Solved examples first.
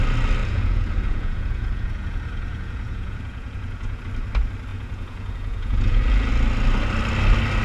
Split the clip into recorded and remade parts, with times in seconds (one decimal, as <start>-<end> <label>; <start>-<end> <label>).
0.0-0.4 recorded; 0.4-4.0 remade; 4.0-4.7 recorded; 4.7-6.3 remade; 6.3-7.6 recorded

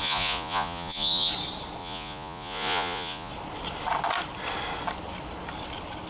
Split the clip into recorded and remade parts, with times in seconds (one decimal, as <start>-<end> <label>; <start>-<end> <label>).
0.0-1.3 remade; 1.3-1.8 recorded; 1.8-3.3 remade; 3.3-6.1 recorded

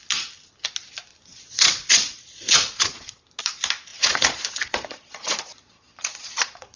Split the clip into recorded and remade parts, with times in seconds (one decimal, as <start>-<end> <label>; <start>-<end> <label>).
0.0-1.1 recorded; 1.1-3.2 remade; 3.2-3.9 recorded; 3.9-6.8 remade

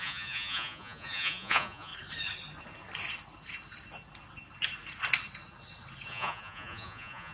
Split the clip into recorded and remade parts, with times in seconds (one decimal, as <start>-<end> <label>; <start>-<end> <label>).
0.0-1.9 remade; 1.9-6.1 recorded; 6.1-7.3 remade